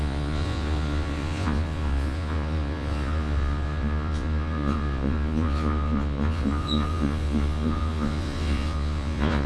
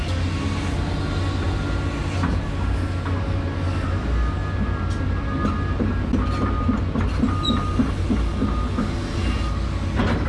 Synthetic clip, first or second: first